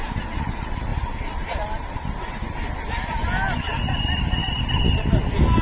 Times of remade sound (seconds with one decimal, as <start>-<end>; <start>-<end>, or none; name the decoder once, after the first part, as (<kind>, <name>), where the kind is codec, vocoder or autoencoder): none